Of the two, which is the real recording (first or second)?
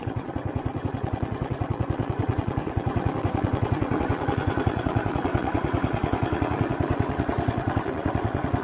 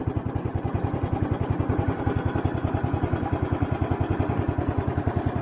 second